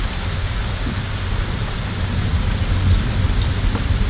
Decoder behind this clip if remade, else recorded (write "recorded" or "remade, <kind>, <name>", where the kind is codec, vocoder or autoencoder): remade, vocoder, BigVGAN v2